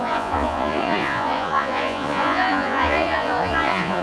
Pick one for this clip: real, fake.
fake